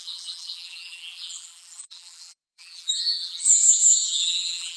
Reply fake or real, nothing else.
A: fake